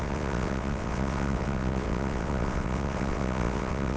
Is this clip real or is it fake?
fake